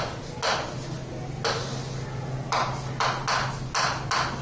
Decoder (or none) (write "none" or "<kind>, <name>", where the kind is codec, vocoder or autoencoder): none